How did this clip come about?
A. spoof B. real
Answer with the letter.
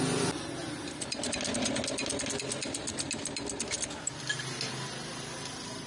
B